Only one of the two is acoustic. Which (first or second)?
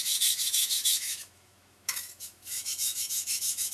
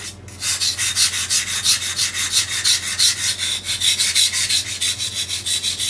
second